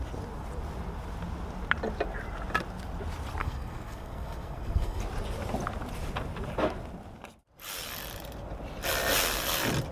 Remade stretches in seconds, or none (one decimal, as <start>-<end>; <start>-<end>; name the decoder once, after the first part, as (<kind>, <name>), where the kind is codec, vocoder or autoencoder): 3.4-5.0 (codec, SNAC)